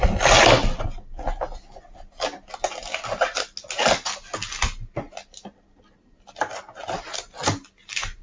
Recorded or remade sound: recorded